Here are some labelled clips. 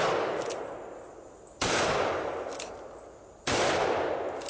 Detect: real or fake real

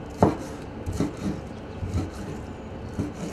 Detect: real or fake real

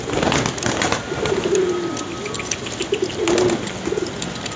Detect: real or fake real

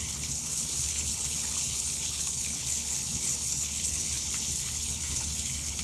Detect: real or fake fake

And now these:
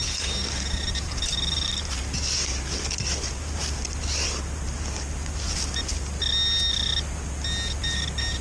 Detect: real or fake real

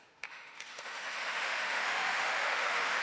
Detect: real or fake fake